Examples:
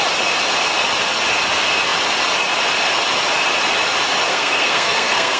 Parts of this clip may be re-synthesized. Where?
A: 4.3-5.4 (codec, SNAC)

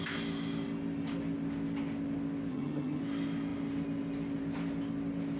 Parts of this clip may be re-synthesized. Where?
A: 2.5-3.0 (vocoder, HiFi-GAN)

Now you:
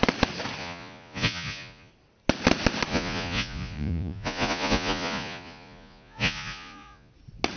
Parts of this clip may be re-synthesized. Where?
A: 0.6-1.9 (vocoder, Vocos); 2.9-7.1

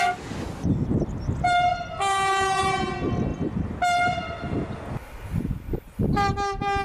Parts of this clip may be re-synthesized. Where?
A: none

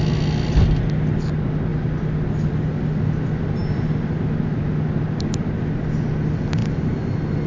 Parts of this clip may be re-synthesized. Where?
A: none

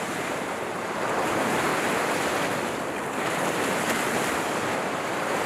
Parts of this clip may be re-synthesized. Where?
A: 0.0-1.7 (vocoder, BigVGAN v2); 4.4-5.5